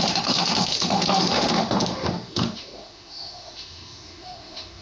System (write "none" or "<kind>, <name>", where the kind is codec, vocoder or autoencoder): autoencoder, DAC-VAE